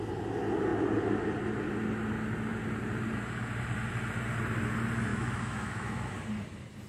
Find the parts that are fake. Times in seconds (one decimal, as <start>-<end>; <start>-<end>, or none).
5.1-6.1